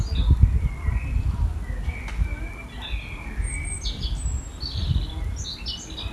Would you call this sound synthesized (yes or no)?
no